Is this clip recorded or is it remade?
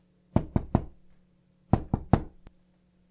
recorded